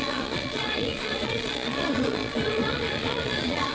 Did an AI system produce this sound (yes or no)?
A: yes